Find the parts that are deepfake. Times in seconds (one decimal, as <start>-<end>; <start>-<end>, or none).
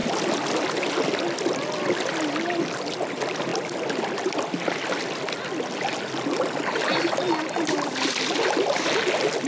none